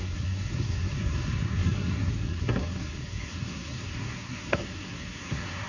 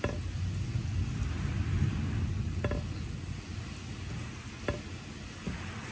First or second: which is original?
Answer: second